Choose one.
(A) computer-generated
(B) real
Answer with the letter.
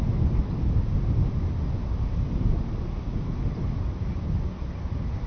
B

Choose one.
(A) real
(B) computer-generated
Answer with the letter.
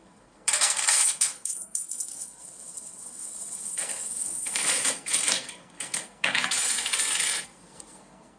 B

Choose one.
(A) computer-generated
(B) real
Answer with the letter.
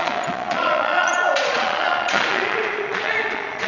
A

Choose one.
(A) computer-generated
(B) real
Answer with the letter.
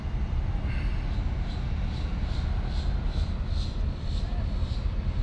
B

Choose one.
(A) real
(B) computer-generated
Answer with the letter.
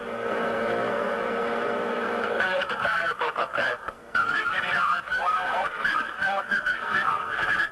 B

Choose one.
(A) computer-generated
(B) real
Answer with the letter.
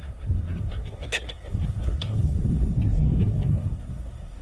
A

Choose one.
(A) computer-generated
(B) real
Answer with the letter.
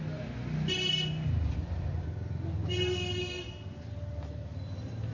B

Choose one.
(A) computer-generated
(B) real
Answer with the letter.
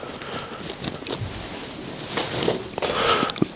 B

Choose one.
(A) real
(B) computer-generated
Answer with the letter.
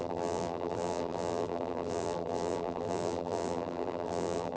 B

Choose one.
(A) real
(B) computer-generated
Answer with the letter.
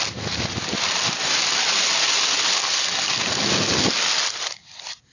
A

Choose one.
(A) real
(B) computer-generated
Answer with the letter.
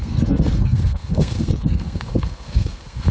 B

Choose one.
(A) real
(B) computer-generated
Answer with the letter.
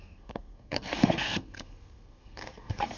B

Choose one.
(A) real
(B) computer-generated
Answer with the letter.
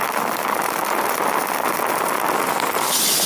A